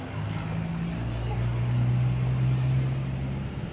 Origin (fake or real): real